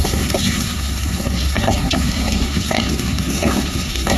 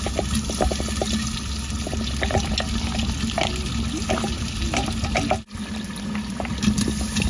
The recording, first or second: second